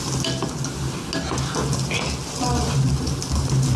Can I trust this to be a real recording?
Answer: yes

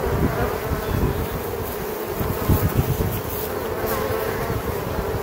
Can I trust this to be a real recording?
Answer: yes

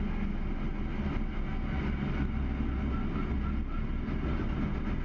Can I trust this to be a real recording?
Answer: yes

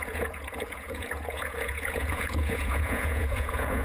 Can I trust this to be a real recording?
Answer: no